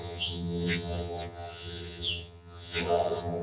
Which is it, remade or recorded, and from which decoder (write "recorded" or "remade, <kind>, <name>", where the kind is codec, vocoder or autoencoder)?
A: remade, vocoder, HiFi-GAN